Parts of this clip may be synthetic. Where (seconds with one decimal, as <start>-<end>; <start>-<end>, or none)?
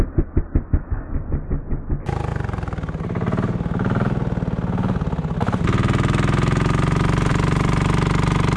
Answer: none